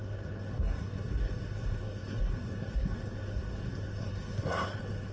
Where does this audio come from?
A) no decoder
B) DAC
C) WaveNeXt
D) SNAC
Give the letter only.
D